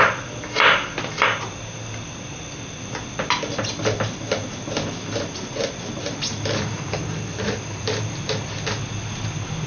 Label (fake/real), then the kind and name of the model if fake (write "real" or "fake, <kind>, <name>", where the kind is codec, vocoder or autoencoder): real